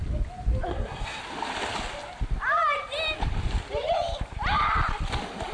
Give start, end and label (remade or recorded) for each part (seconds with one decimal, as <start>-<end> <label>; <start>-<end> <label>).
0.0-0.7 recorded; 0.7-1.2 remade; 1.2-5.5 recorded

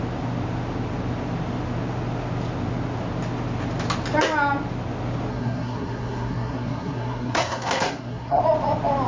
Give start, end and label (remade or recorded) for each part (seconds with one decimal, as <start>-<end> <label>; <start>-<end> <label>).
0.0-5.3 recorded; 5.3-8.4 remade; 8.4-9.1 recorded

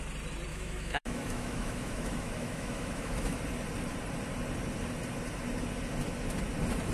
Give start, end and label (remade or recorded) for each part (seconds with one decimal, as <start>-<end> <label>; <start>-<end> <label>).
0.0-0.5 recorded; 0.5-3.4 remade; 3.4-6.9 recorded

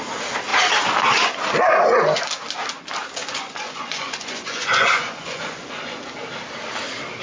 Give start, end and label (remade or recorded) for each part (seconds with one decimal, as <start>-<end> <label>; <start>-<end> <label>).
0.0-3.2 recorded; 3.2-6.0 remade; 6.0-7.2 recorded

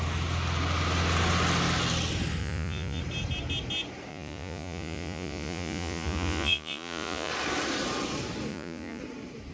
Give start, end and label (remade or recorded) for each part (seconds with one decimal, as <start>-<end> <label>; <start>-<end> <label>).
0.0-2.4 recorded; 2.4-3.0 remade; 3.0-4.1 recorded; 4.1-7.3 remade; 7.3-8.5 recorded; 8.5-9.0 remade; 9.0-9.5 recorded

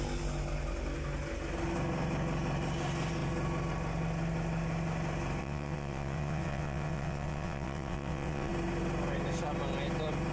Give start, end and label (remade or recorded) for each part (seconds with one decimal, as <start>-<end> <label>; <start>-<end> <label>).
0.0-5.4 recorded; 5.4-8.5 remade; 8.5-10.3 recorded